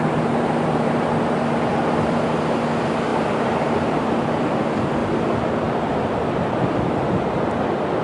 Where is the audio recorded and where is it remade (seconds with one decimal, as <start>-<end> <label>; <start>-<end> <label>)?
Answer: 0.0-3.1 recorded; 3.1-4.6 remade; 4.6-8.0 recorded